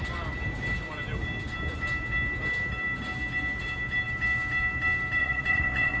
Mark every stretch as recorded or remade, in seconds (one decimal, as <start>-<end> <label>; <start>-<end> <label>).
0.0-5.2 recorded; 5.2-6.0 remade